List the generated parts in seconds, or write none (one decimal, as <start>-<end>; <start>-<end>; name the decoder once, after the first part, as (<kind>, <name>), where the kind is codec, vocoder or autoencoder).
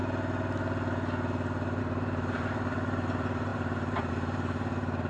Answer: 1.8-5.1 (vocoder, BigVGAN v2)